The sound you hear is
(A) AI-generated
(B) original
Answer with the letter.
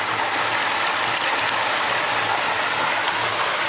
B